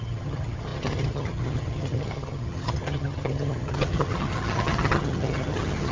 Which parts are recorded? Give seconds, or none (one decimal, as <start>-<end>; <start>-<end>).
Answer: none